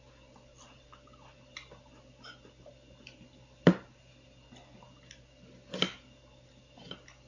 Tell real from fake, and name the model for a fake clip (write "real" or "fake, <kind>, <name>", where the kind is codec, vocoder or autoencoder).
real